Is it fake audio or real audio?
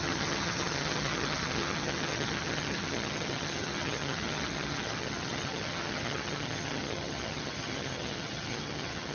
fake